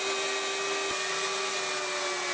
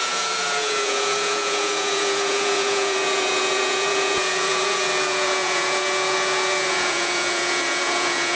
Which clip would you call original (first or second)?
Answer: first